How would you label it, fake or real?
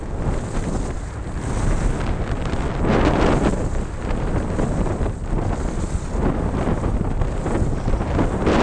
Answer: real